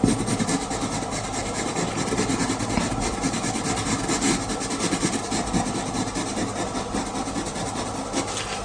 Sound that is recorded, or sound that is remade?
recorded